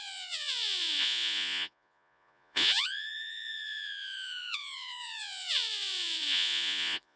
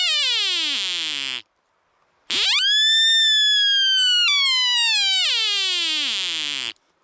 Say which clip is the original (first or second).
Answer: second